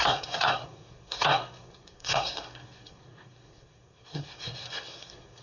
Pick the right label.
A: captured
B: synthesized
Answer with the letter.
B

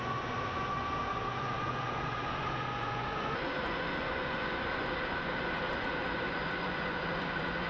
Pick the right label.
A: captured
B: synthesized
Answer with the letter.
B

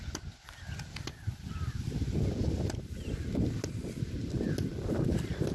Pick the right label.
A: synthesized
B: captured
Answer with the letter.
B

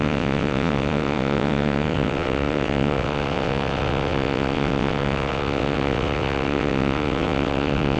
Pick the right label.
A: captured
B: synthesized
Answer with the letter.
B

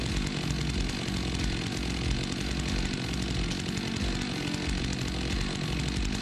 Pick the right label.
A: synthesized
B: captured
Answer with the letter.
B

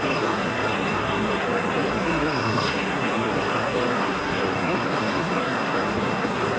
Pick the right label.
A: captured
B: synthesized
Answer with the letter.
B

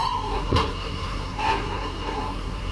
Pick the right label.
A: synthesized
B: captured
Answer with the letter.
A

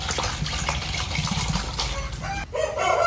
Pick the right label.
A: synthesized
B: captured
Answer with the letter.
B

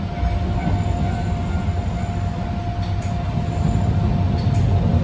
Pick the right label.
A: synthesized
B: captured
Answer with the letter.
B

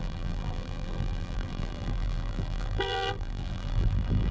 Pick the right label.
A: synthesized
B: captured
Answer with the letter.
A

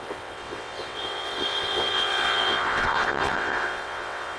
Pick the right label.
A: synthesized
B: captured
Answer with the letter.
A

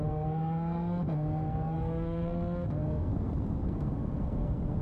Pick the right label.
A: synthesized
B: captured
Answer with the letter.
A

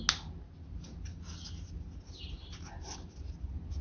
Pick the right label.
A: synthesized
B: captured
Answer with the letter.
B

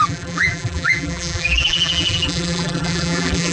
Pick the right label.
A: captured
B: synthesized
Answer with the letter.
B